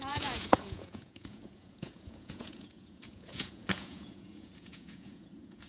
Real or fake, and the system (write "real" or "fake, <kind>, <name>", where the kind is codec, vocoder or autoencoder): fake, vocoder, Vocos